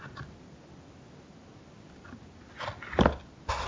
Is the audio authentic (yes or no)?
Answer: yes